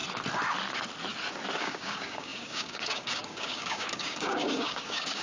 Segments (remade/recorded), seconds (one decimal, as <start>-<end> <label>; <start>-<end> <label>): 0.0-1.6 recorded; 1.6-5.2 remade